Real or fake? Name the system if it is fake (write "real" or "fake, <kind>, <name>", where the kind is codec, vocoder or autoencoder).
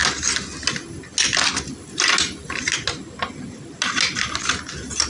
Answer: real